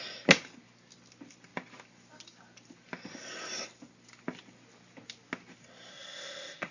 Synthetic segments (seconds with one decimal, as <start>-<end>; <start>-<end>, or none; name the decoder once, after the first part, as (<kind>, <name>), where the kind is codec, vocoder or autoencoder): 5.9-6.7 (codec, ZipCodec)